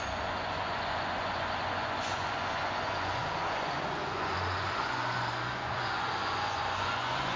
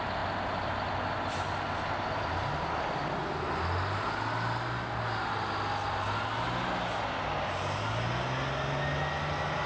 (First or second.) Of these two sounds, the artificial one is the first